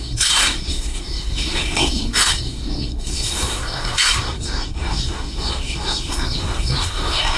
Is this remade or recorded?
remade